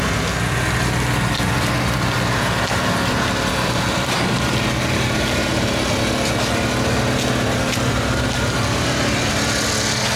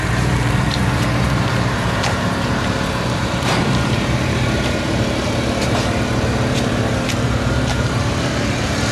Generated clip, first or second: second